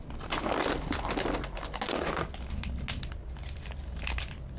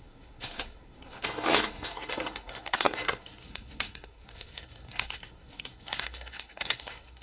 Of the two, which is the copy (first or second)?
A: second